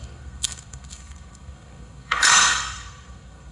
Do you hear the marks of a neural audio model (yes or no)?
yes